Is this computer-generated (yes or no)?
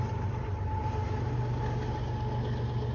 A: no